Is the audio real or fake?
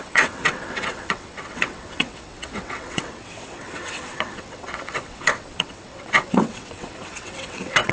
fake